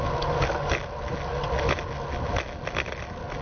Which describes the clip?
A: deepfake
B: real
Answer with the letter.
B